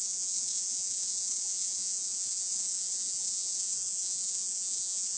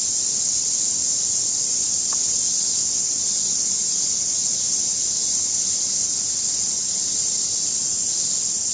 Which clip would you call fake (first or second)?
first